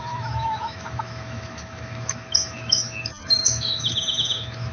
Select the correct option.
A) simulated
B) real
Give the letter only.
A